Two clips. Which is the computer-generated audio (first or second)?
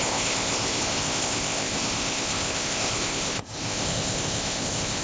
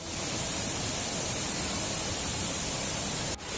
first